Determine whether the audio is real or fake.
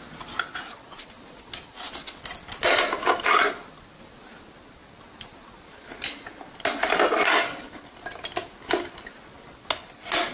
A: real